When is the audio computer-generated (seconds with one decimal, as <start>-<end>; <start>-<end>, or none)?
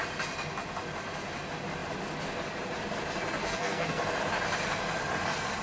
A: 3.4-4.0